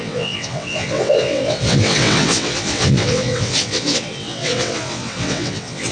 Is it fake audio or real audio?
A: fake